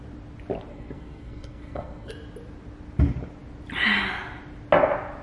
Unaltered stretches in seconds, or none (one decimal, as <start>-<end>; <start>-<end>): 0.0-0.7; 2.1-5.2